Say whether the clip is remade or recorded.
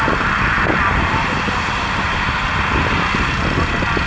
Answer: recorded